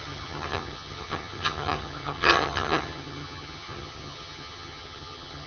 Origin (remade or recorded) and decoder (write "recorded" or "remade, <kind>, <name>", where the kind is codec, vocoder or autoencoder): remade, vocoder, HiFi-GAN